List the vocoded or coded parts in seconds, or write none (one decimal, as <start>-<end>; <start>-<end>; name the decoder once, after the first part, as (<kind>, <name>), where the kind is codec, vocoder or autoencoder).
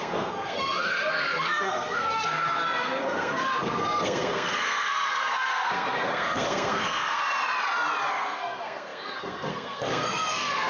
0.0-7.2 (codec, SNAC); 8.1-10.7